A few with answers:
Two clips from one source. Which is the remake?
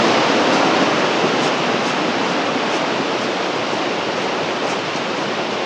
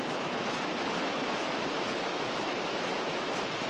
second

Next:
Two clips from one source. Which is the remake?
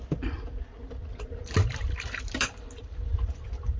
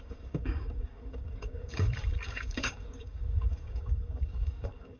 second